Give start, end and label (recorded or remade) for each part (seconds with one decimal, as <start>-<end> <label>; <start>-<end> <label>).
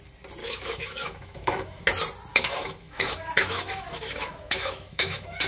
0.0-0.4 recorded; 0.4-1.8 remade; 1.8-2.3 recorded; 2.3-5.5 remade